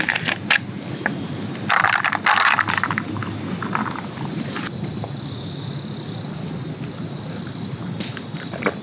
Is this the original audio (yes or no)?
yes